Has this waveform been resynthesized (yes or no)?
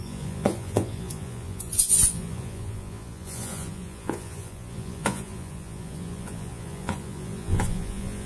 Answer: yes